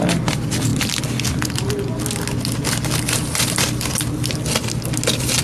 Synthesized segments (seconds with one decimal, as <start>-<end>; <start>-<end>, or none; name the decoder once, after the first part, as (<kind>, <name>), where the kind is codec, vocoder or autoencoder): none